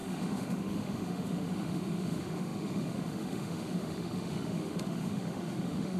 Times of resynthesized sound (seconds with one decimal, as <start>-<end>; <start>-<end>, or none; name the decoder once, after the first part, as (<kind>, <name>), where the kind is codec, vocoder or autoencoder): 0.0-6.0 (autoencoder, DAC-VAE)